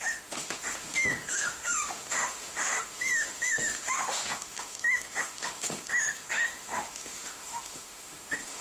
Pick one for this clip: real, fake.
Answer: fake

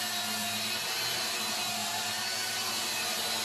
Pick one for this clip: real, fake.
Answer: real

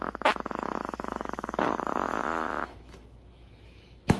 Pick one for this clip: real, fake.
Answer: fake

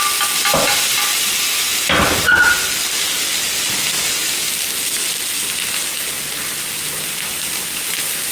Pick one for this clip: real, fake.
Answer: real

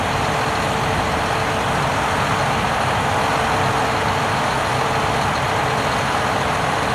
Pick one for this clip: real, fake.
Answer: real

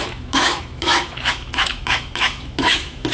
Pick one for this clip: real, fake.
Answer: fake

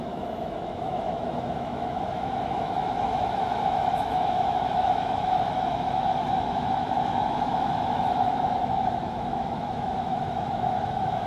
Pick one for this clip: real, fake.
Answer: fake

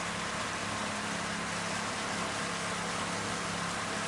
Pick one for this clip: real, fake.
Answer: real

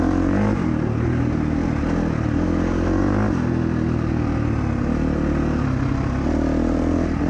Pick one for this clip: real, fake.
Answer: real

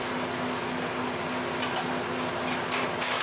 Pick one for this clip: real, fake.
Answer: real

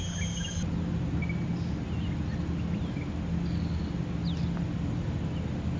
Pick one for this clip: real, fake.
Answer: real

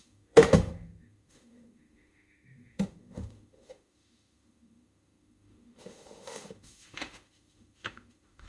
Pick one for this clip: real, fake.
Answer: fake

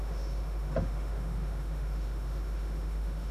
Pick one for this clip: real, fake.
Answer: fake